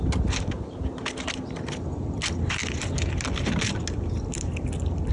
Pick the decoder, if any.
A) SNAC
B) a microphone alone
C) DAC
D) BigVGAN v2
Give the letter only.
B